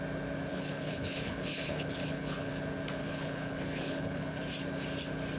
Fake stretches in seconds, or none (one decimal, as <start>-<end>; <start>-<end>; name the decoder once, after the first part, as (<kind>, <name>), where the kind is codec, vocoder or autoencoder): 0.5-2.5 (codec, HILCodec); 3.0-4.4